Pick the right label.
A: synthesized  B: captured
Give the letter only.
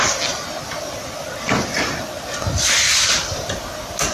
B